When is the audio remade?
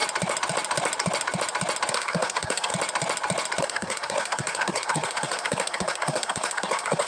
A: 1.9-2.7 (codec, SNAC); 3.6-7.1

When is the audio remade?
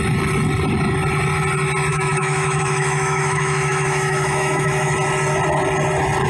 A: 1.9-4.9 (autoencoder, DAC-VAE)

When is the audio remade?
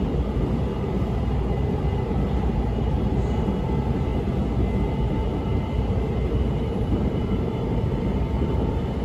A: 0.0-4.1 (vocoder, BigVGAN v2); 5.1-9.0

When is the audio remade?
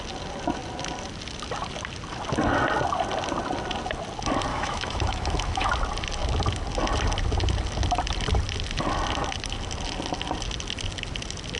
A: 4.5-5.7 (autoencoder, DAC-VAE)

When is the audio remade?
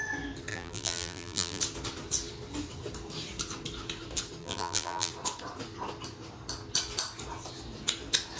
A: 0.5-1.6 (vocoder, BigVGAN v2); 4.4-5.1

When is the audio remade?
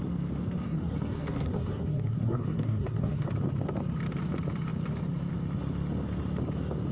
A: 0.6-3.3 (codec, SNAC)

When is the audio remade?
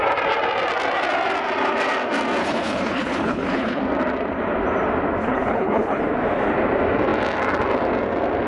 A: 2.4-3.8 (codec, HILCodec); 5.2-6.0